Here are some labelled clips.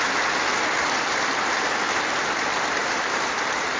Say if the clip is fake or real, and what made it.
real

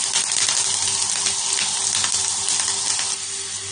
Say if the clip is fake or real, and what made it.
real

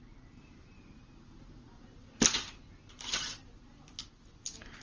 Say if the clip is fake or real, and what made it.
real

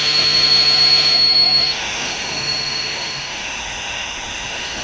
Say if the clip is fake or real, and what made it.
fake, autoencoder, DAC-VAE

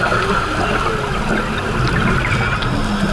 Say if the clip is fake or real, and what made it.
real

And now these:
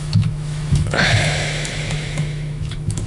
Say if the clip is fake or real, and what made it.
fake, autoencoder, DAC-VAE